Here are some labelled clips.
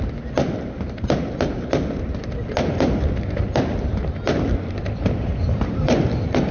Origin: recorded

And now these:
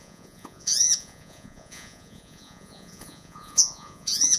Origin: remade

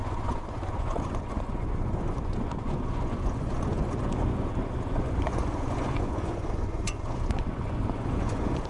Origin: remade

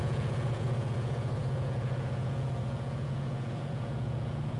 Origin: remade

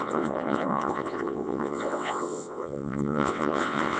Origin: remade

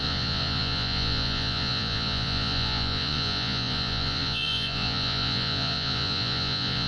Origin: remade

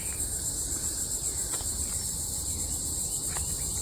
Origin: remade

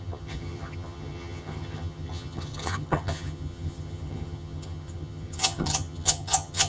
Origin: remade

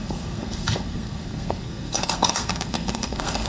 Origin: remade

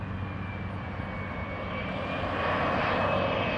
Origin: recorded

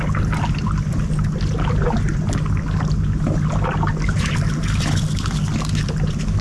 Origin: recorded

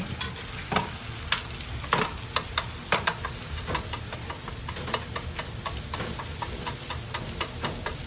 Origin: recorded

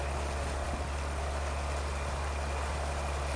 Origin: recorded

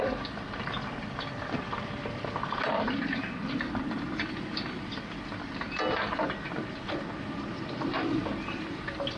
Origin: recorded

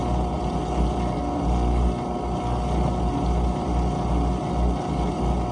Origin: recorded